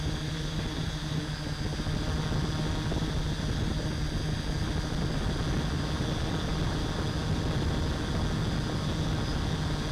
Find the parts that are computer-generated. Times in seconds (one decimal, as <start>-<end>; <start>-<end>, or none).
none